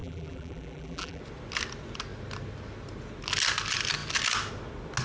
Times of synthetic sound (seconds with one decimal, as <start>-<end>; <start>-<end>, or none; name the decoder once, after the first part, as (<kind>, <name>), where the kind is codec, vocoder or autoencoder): 0.0-1.2 (vocoder, BigVGAN v2)